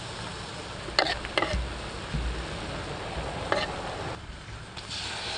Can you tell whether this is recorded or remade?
recorded